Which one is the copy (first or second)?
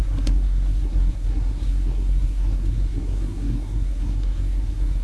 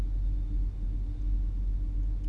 first